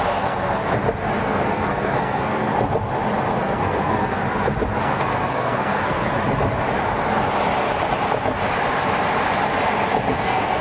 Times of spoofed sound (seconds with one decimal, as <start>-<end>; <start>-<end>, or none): 0.0-0.6; 1.2-2.5; 3.4-4.2; 4.8-6.1; 10.1-10.6